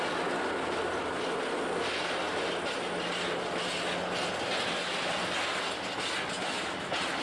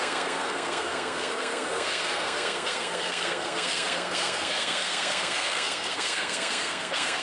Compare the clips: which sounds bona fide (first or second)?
first